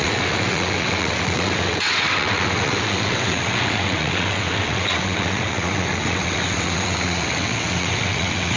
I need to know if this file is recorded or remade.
remade